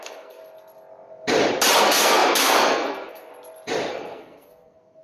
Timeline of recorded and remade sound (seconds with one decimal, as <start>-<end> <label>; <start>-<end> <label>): 0.0-0.4 remade; 0.4-1.8 recorded; 1.8-3.3 remade; 3.3-3.9 recorded; 3.9-5.0 remade